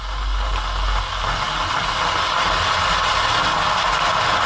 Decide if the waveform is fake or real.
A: real